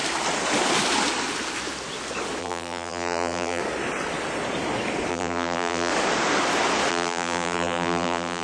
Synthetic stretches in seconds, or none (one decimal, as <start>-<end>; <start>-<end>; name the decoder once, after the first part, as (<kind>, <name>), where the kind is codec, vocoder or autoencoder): 2.4-3.6 (vocoder, BigVGAN v2); 5.1-5.9; 6.9-8.4